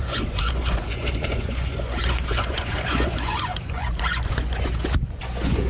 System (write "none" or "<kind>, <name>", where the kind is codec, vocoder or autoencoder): vocoder, Vocos